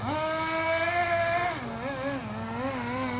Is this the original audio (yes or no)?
yes